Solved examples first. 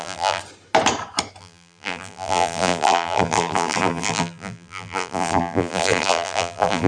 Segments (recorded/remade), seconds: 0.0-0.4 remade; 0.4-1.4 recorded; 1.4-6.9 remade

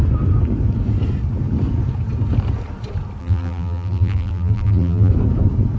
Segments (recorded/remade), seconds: 0.0-3.2 recorded; 3.2-5.1 remade; 5.1-5.8 recorded